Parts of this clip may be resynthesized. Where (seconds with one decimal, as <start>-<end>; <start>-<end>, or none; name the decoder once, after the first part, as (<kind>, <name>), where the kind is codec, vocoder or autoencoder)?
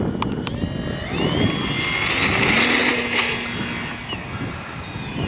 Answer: none